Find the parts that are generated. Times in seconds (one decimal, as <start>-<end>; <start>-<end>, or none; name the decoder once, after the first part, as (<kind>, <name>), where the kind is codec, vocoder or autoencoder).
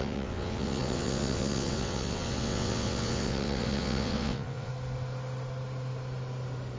0.0-4.7 (vocoder, WaveNeXt)